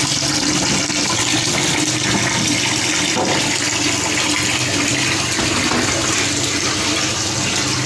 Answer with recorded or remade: recorded